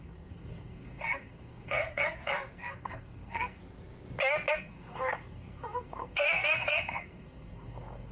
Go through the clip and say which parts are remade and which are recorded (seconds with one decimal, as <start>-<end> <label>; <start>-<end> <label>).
0.0-3.6 remade; 3.6-4.5 recorded; 4.5-8.1 remade